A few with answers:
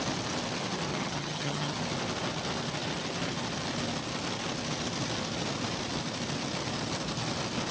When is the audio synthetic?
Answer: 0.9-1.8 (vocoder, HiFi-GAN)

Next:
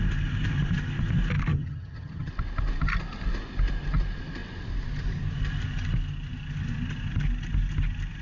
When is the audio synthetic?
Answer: 1.5-2.3 (vocoder, HiFi-GAN)

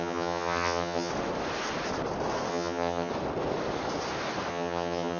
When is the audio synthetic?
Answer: 0.0-1.1 (vocoder, HiFi-GAN); 2.5-3.1; 4.5-5.2